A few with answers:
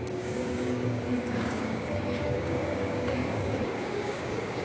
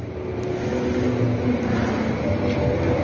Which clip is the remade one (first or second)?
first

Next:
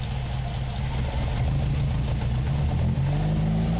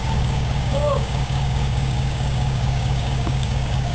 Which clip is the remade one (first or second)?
second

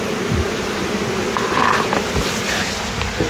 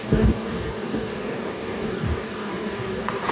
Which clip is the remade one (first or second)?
second